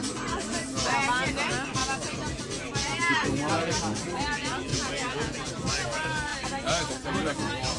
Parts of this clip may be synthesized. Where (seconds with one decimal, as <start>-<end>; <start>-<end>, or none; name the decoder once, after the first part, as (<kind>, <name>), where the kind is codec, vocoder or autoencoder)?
4.7-5.5 (vocoder, Vocos)